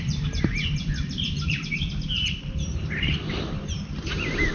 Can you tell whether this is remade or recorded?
remade